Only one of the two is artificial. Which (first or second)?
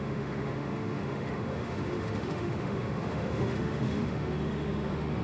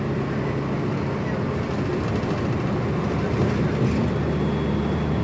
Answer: first